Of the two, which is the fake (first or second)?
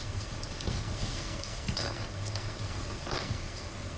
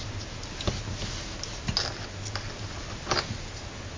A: first